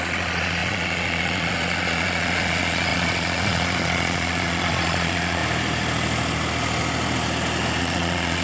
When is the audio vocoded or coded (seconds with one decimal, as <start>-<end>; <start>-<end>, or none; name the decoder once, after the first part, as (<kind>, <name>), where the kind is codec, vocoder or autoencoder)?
0.0-5.4 (vocoder, Vocos); 7.8-8.4